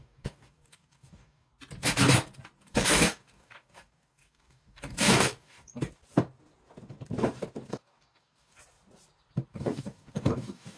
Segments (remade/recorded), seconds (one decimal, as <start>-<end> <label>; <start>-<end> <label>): 0.0-1.5 remade; 1.5-2.6 recorded; 2.6-5.7 remade; 5.7-7.7 recorded; 7.7-8.6 remade; 8.6-9.5 recorded; 9.5-10.8 remade